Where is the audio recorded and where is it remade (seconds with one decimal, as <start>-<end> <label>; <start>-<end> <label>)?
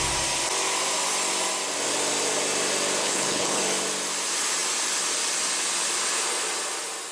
0.0-3.0 recorded; 3.0-3.6 remade; 3.6-7.1 recorded